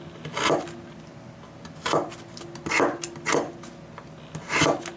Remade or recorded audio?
recorded